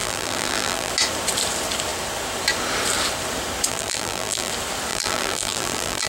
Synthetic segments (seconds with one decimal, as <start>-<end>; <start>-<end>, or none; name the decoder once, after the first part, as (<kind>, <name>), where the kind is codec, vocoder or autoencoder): 0.0-0.9 (vocoder, BigVGAN v2); 3.7-4.5; 4.9-6.1